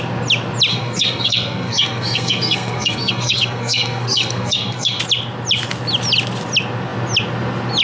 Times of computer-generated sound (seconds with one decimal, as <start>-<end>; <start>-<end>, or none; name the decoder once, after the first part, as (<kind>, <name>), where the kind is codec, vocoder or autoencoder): 0.7-5.0 (codec, SNAC)